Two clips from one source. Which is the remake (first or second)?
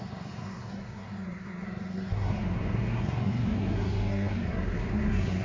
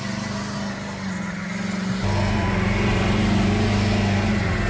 first